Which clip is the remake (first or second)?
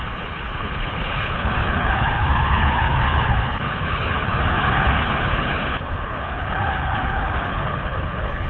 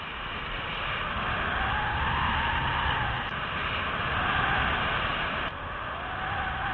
first